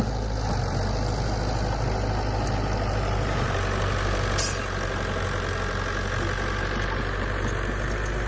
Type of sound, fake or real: real